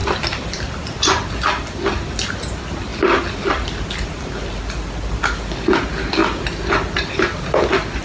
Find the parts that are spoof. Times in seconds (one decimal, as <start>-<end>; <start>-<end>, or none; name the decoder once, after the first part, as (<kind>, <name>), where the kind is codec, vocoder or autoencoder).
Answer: none